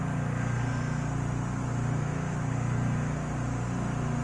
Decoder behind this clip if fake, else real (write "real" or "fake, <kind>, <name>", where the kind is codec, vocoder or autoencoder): real